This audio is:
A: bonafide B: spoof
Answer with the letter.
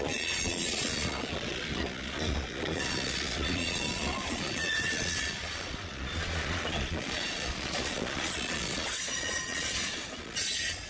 B